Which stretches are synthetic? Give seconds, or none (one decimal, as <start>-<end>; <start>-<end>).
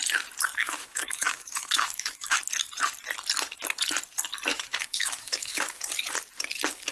0.6-2.4; 4.5-5.8